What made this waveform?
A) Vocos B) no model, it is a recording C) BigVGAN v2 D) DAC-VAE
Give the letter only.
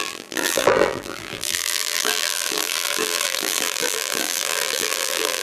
C